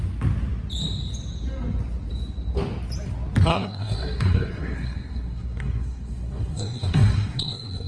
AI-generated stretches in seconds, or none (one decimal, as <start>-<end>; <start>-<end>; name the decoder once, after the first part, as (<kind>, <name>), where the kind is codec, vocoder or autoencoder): 3.5-7.9 (codec, SNAC)